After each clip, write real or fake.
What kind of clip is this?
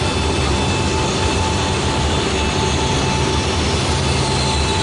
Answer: real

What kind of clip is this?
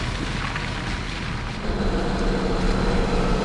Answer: real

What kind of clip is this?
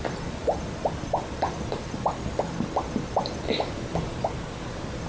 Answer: fake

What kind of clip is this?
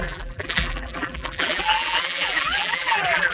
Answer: fake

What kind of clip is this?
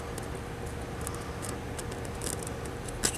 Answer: real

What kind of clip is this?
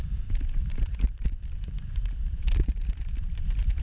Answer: fake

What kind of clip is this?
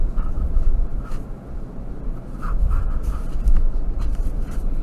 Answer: fake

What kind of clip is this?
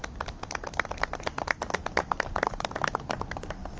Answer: fake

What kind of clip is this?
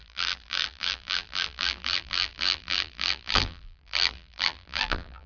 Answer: fake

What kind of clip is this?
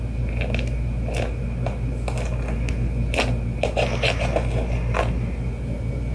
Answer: real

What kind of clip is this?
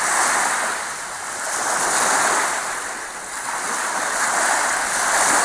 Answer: real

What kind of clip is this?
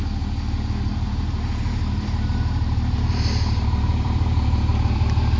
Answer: fake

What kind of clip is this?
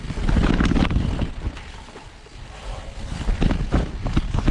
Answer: real